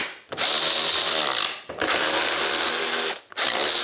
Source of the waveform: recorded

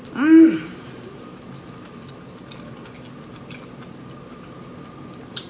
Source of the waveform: recorded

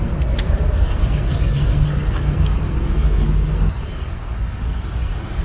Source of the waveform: remade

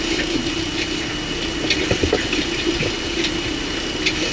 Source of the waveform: recorded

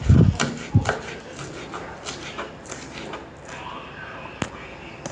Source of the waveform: recorded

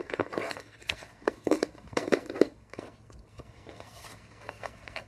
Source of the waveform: remade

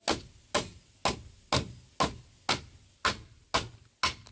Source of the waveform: recorded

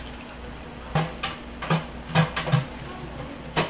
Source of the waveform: recorded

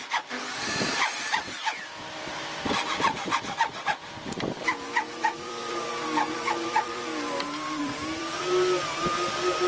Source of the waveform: remade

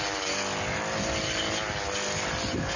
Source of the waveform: recorded